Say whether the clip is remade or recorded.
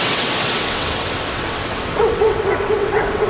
remade